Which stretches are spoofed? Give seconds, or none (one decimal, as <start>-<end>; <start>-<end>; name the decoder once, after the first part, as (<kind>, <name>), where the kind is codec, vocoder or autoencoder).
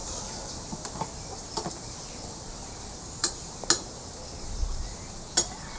0.0-3.5 (vocoder, BigVGAN v2)